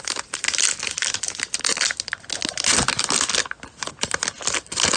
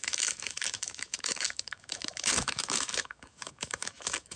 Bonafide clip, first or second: first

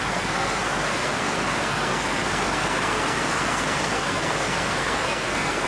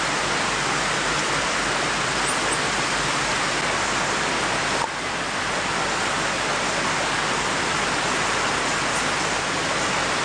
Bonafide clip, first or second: second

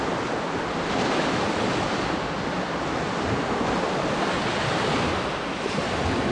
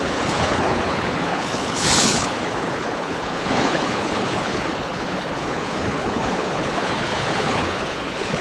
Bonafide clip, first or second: first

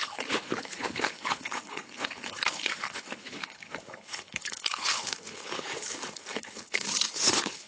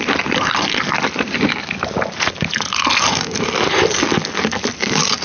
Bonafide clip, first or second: second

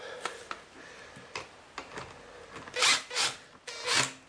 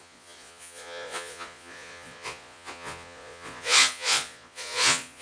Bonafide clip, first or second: first